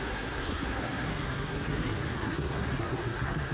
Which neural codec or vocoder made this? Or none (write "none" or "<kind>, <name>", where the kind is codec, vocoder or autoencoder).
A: codec, SNAC